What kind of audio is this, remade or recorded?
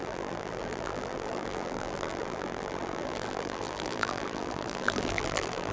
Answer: remade